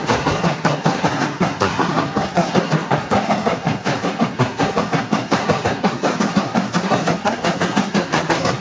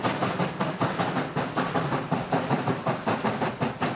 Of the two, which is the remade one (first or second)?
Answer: first